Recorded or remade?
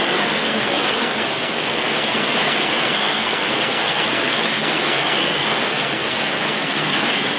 remade